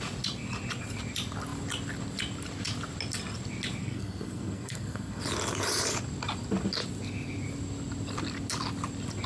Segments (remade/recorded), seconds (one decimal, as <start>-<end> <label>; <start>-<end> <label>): 0.0-3.8 recorded; 3.8-5.2 remade; 5.2-9.3 recorded